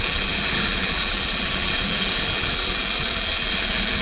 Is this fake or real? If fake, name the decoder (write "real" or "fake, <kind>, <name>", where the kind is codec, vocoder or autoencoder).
fake, vocoder, BigVGAN v2